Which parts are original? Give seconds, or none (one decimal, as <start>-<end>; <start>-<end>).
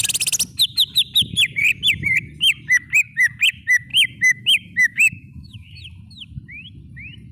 0.0-3.9; 5.8-7.3